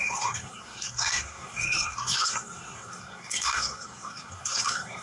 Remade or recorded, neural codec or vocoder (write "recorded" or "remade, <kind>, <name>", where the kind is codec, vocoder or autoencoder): remade, codec, SNAC